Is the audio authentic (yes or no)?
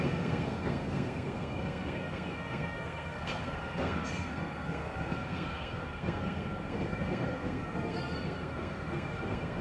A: no